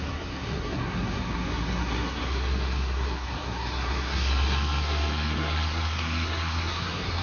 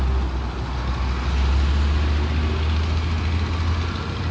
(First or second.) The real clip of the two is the second